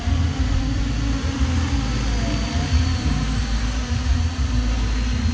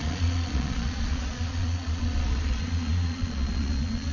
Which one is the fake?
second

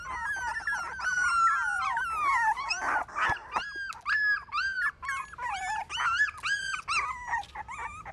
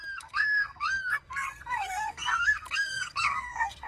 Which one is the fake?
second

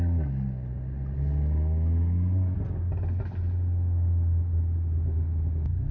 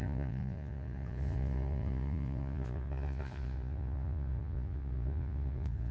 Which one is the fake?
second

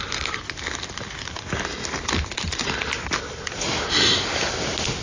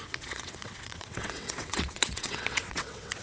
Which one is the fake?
second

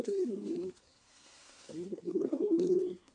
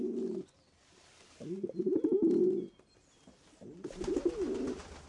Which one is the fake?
first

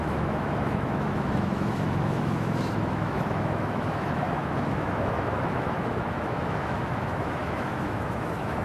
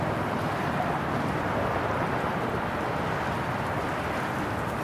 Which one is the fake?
first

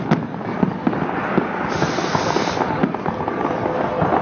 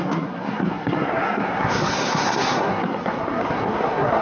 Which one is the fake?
second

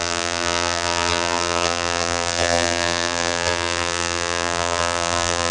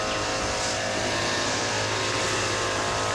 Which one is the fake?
first